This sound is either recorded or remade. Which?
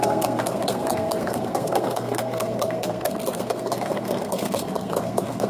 remade